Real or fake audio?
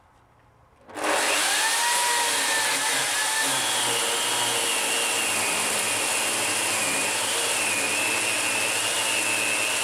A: real